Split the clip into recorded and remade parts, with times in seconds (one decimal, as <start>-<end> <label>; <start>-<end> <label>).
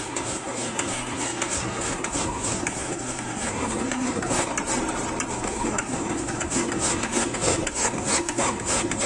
0.0-4.5 remade; 4.5-5.3 recorded; 5.3-9.1 remade